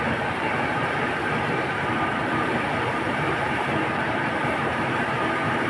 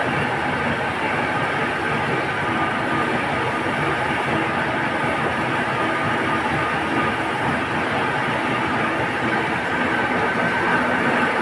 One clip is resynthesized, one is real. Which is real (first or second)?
second